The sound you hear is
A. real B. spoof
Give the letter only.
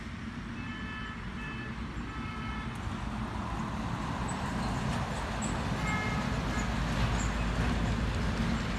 A